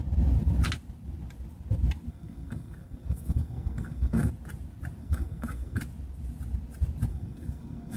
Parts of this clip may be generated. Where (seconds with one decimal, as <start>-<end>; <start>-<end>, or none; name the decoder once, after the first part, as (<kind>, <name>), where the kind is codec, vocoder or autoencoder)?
2.1-4.3 (codec, SNAC); 5.0-5.8; 7.1-8.0